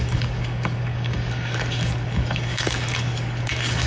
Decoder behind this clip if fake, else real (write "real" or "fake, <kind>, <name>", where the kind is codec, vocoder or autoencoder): fake, codec, DAC